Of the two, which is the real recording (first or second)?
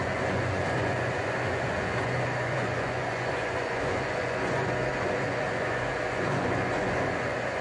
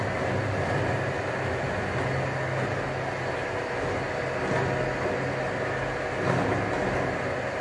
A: second